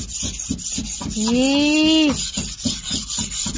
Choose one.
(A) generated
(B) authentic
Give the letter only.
B